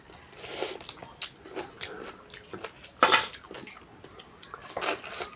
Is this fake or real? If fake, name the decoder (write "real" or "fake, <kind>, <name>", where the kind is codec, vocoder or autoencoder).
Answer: real